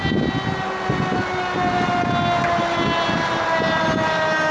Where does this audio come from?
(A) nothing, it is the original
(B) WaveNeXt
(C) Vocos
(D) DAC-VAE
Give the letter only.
A